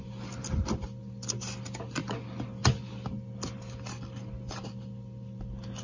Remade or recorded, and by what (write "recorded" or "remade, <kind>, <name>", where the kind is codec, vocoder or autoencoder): recorded